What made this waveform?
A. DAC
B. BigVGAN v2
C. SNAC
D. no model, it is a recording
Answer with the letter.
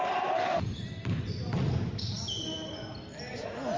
D